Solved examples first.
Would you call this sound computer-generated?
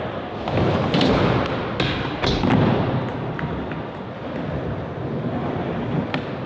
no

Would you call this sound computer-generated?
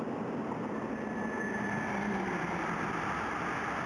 no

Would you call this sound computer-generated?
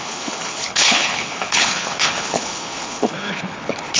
yes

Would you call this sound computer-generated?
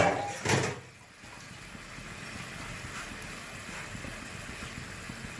no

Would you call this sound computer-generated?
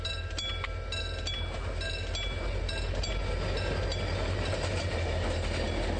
no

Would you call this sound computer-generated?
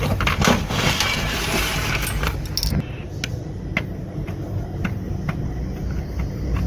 no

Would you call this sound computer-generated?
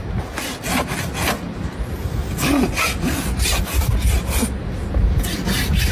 no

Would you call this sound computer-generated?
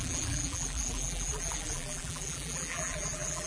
yes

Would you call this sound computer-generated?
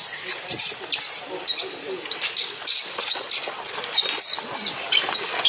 no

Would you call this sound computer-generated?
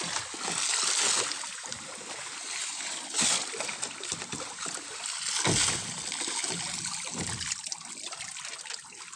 no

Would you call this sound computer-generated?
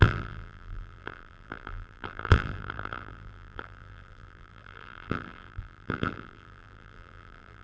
yes